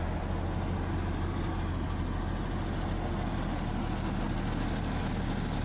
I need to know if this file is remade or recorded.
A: recorded